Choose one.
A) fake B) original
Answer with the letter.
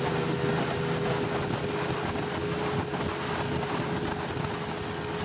B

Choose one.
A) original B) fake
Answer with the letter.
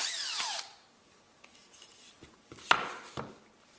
A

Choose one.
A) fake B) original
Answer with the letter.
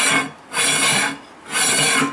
B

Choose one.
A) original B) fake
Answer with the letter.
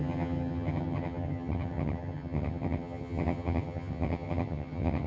B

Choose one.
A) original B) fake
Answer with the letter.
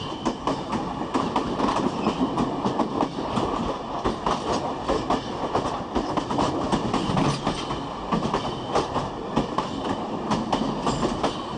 A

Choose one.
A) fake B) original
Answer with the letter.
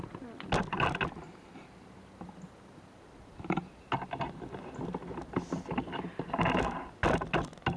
B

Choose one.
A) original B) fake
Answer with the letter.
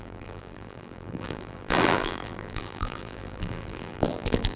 B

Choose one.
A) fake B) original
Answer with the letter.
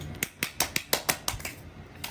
B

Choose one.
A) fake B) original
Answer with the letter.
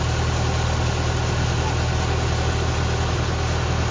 B